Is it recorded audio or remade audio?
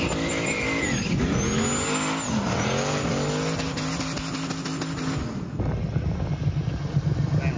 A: recorded